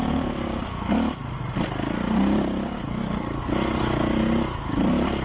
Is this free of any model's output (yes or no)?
yes